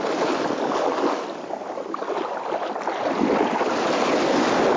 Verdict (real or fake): real